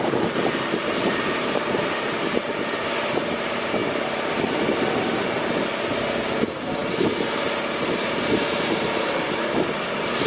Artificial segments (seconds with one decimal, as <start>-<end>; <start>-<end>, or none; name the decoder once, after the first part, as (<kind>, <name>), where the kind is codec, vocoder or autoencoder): none